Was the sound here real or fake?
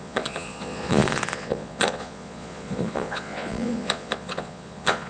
fake